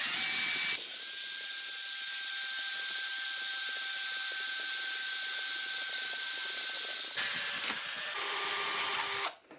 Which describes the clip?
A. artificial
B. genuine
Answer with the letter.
B